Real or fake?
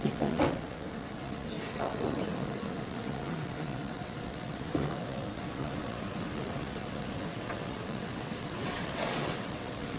fake